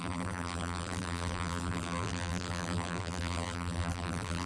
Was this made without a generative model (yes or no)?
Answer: no